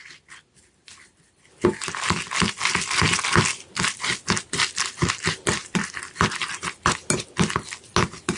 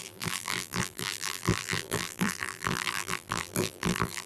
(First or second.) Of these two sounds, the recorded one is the first